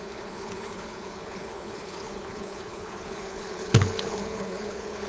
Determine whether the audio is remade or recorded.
remade